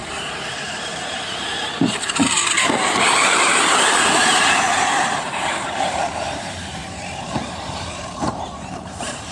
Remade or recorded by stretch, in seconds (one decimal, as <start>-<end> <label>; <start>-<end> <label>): 0.0-9.3 remade